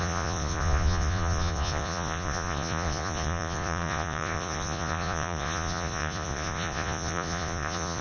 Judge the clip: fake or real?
fake